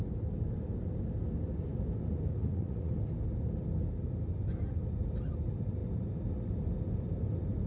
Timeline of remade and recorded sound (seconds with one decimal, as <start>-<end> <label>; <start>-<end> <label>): 0.0-2.3 recorded; 2.3-2.9 remade; 2.9-7.7 recorded